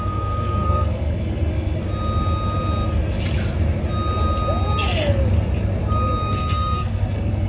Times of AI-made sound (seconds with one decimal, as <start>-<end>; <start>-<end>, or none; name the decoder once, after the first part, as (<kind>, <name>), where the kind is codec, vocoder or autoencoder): 0.0-1.8 (codec, SNAC); 6.3-7.5